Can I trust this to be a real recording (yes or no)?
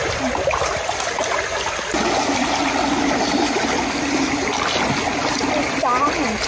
yes